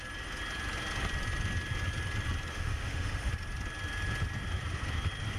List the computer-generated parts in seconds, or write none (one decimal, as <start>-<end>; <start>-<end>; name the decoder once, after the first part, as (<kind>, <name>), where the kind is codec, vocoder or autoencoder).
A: 2.5-3.3 (autoencoder, DAC-VAE)

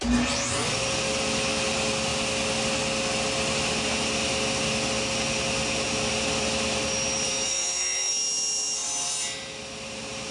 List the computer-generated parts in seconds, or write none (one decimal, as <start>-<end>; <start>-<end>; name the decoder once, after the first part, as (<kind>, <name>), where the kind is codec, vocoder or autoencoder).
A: 7.3-8.1 (autoencoder, DAC-VAE)

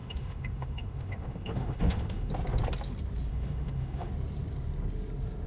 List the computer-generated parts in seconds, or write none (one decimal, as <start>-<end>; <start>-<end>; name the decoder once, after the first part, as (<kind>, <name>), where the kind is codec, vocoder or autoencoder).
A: 0.0-2.3 (autoencoder, DAC-VAE); 3.3-4.1

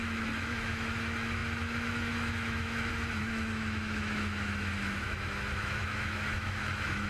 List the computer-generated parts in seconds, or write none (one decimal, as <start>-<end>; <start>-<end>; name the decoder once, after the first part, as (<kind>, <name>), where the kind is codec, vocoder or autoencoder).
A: 0.0-7.1 (autoencoder, DAC-VAE)

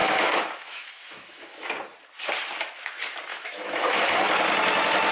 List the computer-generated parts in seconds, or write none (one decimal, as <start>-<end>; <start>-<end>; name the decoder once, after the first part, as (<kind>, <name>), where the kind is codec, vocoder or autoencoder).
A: 0.0-1.7 (autoencoder, DAC-VAE); 3.3-4.2

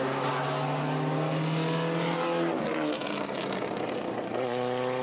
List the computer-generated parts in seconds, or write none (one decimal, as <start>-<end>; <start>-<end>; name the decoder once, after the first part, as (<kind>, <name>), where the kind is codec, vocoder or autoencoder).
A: none

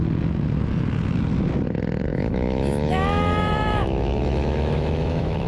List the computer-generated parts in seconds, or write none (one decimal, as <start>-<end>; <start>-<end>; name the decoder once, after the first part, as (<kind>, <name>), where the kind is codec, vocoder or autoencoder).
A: 2.1-5.5 (autoencoder, DAC-VAE)